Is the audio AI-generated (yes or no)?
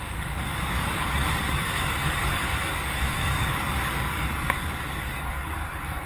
yes